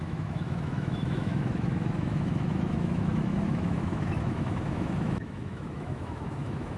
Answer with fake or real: fake